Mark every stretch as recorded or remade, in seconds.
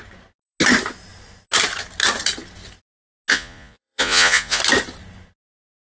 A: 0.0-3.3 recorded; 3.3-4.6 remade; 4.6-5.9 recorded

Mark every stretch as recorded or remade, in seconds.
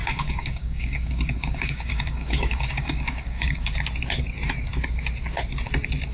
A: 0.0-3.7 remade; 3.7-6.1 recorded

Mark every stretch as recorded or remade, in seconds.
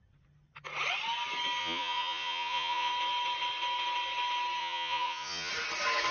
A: 0.0-1.6 recorded; 1.6-2.9 remade; 2.9-4.6 recorded; 4.6-5.5 remade; 5.5-6.1 recorded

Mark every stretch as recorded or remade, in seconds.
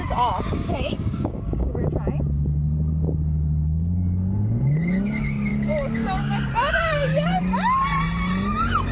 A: 0.0-0.7 recorded; 0.7-1.8 remade; 1.8-5.5 recorded; 5.5-7.4 remade; 7.4-8.9 recorded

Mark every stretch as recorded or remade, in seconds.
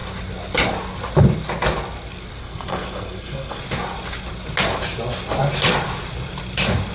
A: 0.0-2.4 recorded; 2.4-3.6 remade; 3.6-6.9 recorded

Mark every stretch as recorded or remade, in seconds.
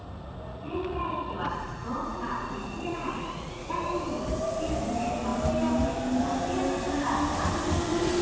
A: 0.0-0.5 recorded; 0.5-3.7 remade; 3.7-8.2 recorded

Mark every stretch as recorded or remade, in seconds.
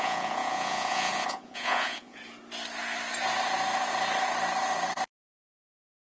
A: 0.0-2.2 remade; 2.2-6.1 recorded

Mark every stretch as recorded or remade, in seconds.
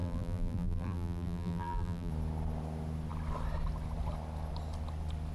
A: 0.0-2.1 remade; 2.1-5.3 recorded